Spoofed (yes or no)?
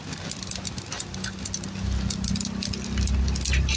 no